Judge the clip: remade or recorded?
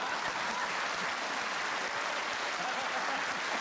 recorded